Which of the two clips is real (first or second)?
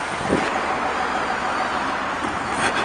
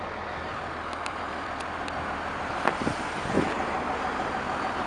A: first